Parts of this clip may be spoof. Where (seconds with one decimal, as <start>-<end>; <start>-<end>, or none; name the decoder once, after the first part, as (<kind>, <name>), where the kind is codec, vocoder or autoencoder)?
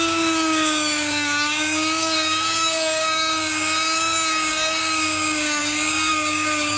0.0-6.8 (codec, DAC)